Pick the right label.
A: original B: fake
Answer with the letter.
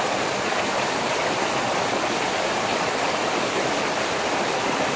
A